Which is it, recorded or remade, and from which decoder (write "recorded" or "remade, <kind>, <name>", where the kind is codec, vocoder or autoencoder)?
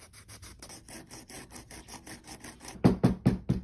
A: recorded